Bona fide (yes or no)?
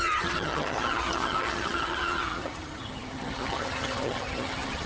no